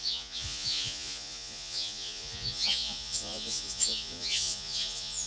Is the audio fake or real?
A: fake